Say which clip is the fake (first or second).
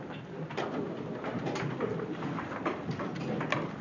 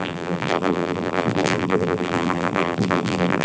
second